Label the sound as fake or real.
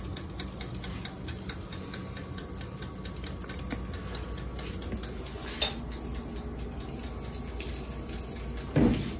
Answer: real